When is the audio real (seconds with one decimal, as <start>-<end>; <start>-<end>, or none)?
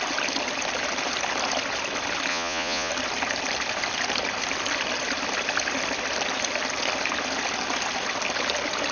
0.0-2.3; 2.9-8.9